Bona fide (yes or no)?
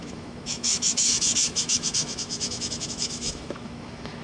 no